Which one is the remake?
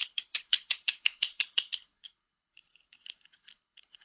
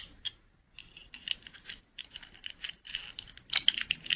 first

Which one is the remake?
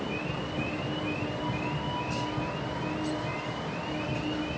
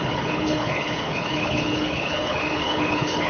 second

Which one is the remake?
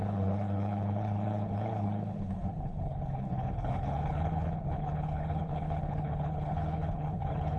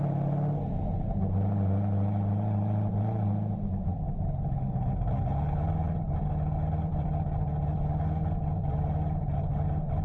first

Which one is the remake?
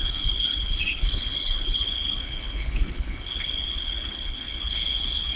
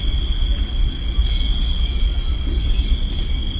first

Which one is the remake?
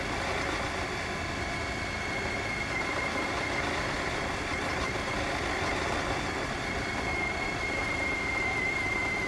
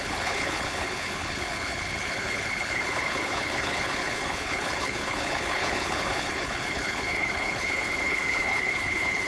second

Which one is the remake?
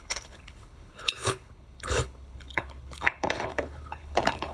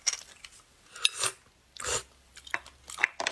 first